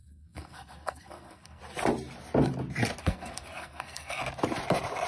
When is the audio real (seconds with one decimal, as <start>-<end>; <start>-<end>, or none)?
1.6-3.0; 4.2-5.1